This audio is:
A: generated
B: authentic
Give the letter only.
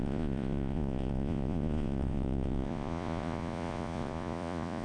A